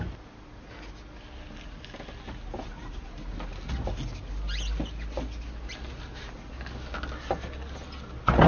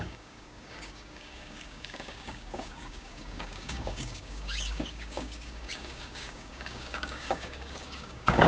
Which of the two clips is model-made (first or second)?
second